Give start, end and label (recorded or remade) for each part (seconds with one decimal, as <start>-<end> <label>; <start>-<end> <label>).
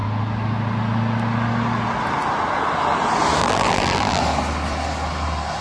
0.0-3.4 recorded; 3.4-4.2 remade; 4.2-5.6 recorded